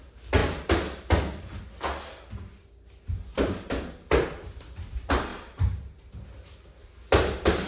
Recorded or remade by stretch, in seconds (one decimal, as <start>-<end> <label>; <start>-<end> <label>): 0.0-7.7 recorded